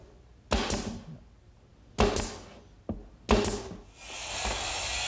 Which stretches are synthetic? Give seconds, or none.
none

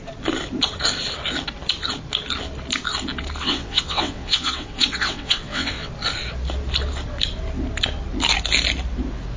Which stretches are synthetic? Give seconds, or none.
3.4-5.9 (vocoder, WaveNeXt)